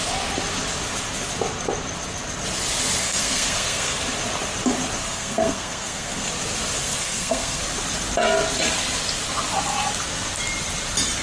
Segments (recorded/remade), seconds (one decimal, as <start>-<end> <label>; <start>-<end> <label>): 0.0-3.0 recorded; 3.0-4.0 remade; 4.0-5.0 recorded; 5.0-6.3 remade; 6.3-6.8 recorded; 6.8-7.6 remade; 7.6-11.2 recorded